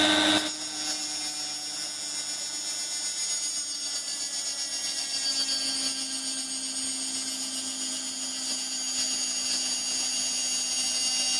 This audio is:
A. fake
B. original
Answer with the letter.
B